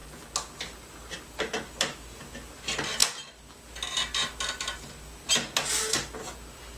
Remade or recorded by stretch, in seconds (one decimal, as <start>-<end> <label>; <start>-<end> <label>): 0.0-6.8 recorded